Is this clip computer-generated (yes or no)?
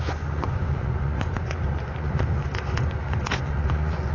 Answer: yes